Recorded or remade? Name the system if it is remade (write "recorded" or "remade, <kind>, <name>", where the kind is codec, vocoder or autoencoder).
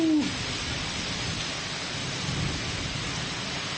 recorded